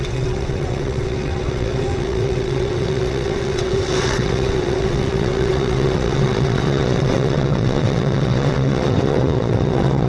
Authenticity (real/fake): fake